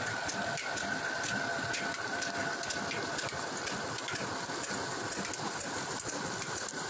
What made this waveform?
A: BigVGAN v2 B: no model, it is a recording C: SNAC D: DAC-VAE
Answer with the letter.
B